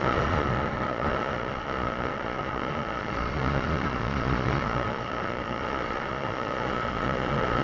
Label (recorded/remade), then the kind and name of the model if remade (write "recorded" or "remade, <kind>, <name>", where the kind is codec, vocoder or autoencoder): remade, vocoder, Vocos